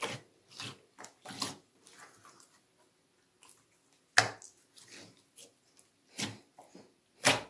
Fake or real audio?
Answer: real